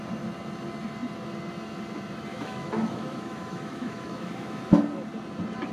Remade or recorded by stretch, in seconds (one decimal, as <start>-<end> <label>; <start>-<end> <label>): 0.0-2.3 recorded; 2.3-4.6 remade; 4.6-5.7 recorded